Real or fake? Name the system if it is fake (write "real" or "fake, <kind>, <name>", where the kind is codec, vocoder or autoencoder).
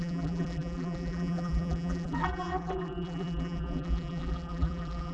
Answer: fake, vocoder, BigVGAN v2